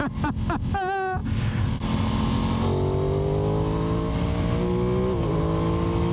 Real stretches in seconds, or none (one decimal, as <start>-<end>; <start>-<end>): 0.0-6.1